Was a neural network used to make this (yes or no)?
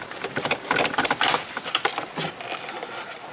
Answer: no